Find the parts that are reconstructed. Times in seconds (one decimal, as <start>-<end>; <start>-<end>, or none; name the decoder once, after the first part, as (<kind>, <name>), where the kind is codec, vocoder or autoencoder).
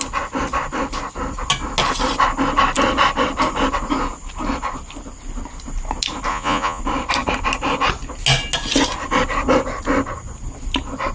6.3-6.8 (vocoder, Vocos)